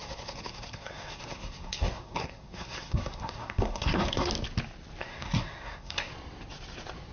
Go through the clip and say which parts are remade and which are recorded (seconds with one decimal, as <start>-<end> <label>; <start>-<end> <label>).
0.0-4.3 remade; 4.3-5.0 recorded; 5.0-6.1 remade; 6.1-7.1 recorded